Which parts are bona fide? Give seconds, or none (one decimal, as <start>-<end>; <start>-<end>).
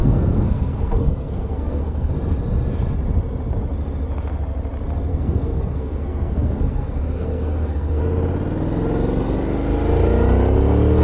2.1-5.1; 8.0-11.0